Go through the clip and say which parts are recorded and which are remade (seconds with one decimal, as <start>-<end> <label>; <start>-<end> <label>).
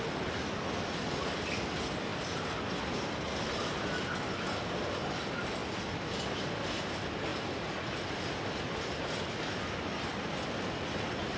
0.0-11.4 recorded